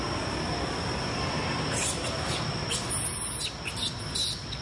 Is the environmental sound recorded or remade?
recorded